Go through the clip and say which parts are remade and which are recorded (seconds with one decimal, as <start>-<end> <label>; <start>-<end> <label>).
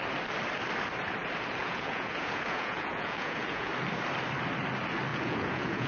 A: 0.0-1.6 recorded; 1.6-3.7 remade; 3.7-5.1 recorded; 5.1-5.9 remade